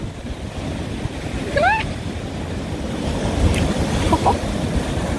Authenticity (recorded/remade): recorded